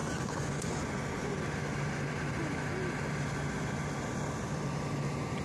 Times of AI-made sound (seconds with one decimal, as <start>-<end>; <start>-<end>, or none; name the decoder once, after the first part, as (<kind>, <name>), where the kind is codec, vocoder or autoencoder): 0.0-0.7 (vocoder, Vocos)